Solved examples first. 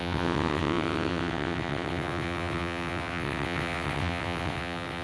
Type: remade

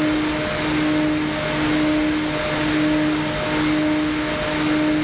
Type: recorded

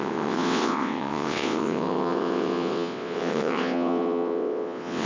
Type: remade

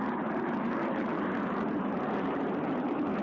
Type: recorded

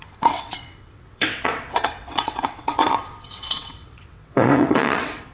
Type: remade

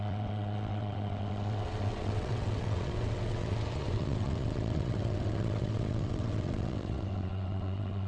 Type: remade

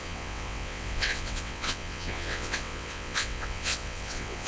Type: remade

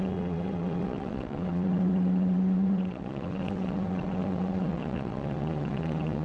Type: remade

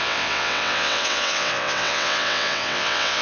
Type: remade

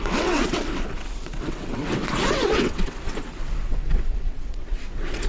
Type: remade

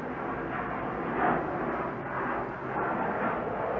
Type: recorded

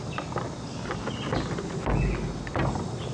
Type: recorded